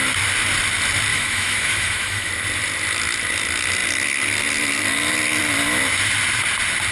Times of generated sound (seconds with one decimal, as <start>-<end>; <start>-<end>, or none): 1.1-2.3

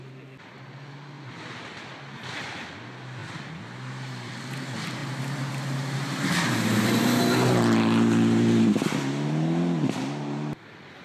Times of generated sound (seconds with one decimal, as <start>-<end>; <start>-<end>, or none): none